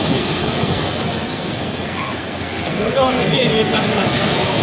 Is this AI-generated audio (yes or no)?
yes